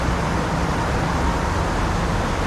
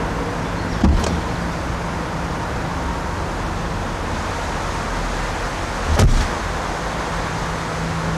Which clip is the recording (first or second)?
second